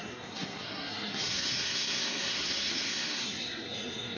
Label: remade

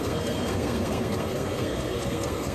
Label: remade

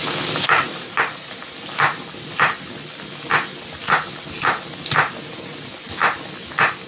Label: recorded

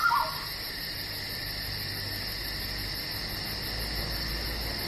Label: recorded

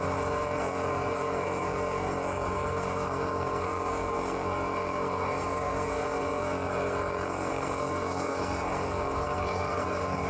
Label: remade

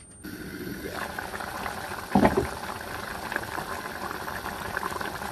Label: recorded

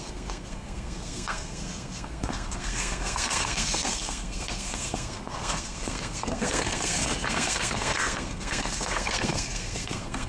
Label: remade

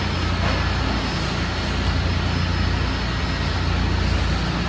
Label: recorded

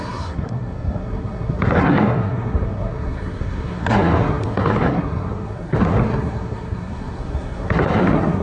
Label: remade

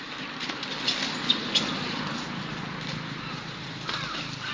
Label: recorded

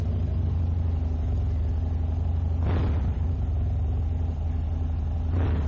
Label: recorded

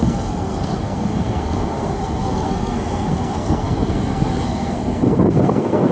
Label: remade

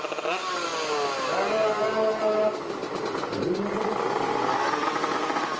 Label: recorded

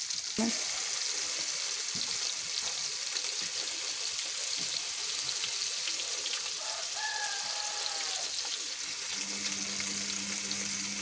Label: recorded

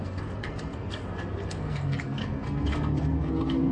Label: remade